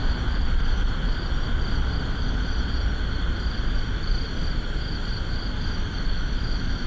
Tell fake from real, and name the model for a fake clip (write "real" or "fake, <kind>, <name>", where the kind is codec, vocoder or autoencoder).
real